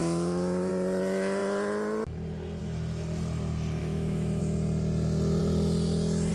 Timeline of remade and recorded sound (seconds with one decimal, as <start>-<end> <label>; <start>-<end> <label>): 0.0-0.7 remade; 0.7-3.8 recorded; 3.8-4.4 remade; 4.4-6.3 recorded